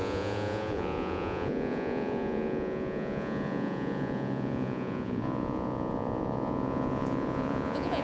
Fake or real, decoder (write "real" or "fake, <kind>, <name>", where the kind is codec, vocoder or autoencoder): fake, vocoder, Vocos